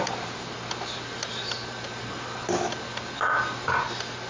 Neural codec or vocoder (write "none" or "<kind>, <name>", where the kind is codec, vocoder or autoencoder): none